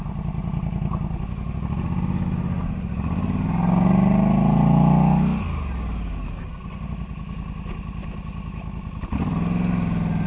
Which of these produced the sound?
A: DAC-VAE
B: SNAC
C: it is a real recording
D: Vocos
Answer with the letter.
C